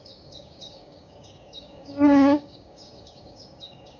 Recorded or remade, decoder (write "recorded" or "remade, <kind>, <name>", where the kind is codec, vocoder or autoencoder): remade, codec, DAC